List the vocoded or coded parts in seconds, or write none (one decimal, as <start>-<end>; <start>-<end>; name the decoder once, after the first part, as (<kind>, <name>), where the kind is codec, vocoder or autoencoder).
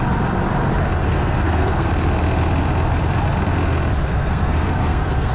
1.0-1.9 (codec, SNAC); 4.1-5.3